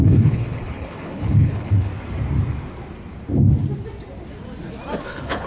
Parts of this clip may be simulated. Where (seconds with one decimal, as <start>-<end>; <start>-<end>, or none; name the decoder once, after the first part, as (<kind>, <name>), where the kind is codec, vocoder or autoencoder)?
0.0-1.9 (codec, HILCodec); 5.0-5.5